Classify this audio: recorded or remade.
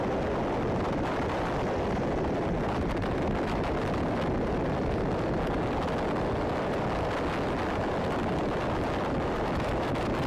recorded